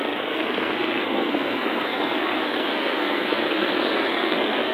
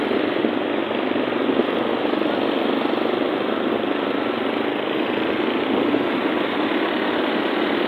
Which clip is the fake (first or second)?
first